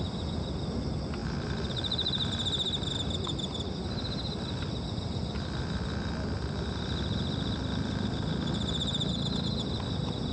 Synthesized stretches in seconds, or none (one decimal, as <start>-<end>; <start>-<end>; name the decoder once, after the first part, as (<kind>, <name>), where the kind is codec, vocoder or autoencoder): none